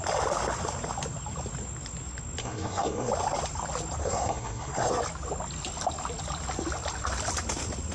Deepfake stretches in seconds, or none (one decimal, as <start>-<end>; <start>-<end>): 2.4-3.1; 4.0-5.0